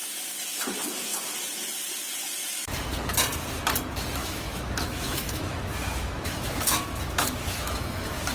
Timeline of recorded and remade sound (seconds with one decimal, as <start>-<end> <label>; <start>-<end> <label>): 0.0-4.2 recorded; 4.2-8.3 remade